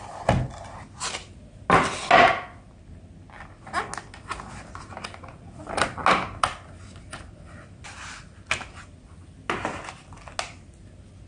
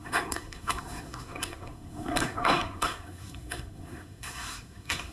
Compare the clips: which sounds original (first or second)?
first